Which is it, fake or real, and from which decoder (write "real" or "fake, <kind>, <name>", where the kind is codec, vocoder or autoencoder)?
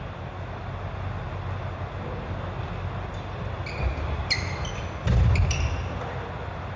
real